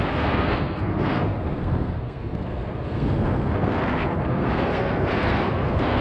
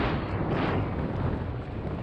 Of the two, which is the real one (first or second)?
second